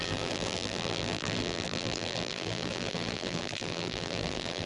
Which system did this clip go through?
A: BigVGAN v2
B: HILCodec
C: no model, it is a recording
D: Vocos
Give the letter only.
A